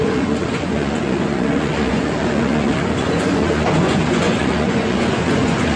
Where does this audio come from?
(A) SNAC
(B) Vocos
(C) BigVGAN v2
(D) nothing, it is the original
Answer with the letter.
B